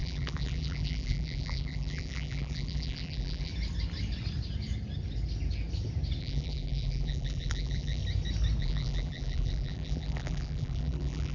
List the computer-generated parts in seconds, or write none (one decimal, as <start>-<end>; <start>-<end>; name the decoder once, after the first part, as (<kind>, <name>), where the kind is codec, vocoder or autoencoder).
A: 0.0-3.5 (vocoder, BigVGAN v2); 6.2-8.0; 8.6-11.3